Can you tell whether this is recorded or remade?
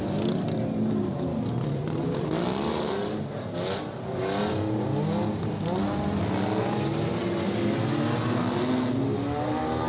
recorded